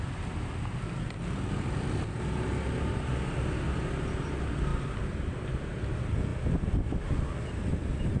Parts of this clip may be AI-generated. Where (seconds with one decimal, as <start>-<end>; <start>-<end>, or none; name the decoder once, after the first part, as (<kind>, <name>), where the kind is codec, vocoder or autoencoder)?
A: none